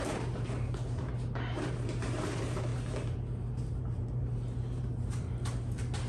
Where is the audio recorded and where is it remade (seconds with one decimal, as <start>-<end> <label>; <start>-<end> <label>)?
0.0-2.7 remade; 2.7-3.5 recorded; 3.5-6.1 remade